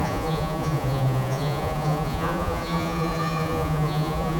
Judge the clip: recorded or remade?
remade